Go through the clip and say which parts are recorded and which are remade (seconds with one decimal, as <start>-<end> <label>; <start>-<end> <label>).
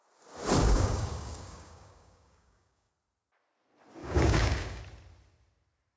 0.0-0.6 recorded; 0.6-2.9 remade; 2.9-4.0 recorded; 4.0-4.8 remade; 4.8-6.0 recorded